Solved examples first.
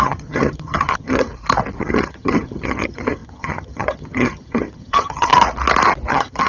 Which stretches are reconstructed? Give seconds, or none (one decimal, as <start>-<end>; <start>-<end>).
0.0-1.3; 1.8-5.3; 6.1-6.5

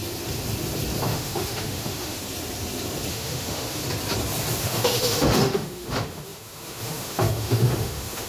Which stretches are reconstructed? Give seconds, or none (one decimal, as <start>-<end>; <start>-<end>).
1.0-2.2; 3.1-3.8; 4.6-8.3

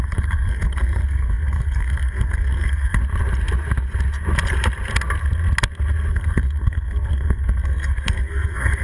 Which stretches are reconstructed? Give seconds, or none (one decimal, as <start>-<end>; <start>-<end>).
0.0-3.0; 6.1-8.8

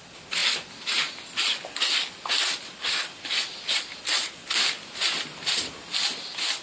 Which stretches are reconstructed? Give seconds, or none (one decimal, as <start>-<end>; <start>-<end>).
none

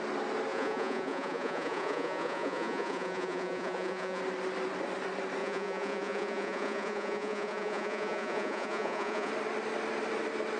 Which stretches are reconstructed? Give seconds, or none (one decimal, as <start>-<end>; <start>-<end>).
0.5-4.2; 5.4-9.3

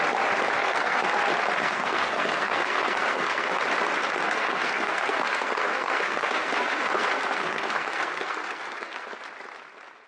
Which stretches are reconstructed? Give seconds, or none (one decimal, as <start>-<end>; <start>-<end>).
0.6-1.1; 1.6-3.6; 4.0-9.1

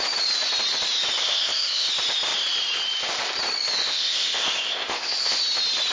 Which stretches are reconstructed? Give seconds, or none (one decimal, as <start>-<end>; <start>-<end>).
1.2-1.9; 3.8-5.4

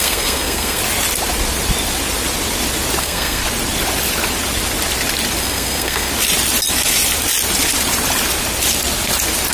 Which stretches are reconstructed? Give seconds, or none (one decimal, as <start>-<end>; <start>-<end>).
0.0-0.8; 3.0-3.4; 5.4-6.1